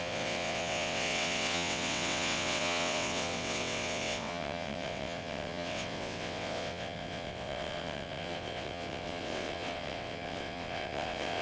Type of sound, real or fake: fake